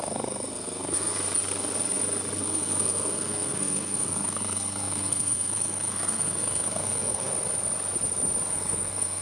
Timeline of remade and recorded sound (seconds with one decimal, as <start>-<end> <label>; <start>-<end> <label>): 0.0-1.1 remade; 1.1-2.4 recorded; 2.4-7.3 remade; 7.3-8.5 recorded; 8.5-9.2 remade